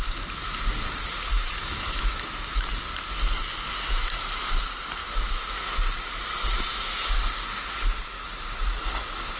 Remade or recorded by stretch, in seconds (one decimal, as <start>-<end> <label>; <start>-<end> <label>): 0.0-1.3 recorded; 1.3-2.7 remade; 2.7-3.7 recorded; 3.7-4.6 remade; 4.6-5.0 recorded; 5.0-5.6 remade; 5.6-6.5 recorded; 6.5-7.1 remade; 7.1-9.4 recorded